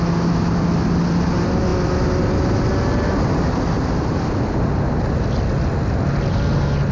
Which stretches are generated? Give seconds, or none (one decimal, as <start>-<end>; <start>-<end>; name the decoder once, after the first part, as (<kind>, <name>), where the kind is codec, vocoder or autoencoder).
none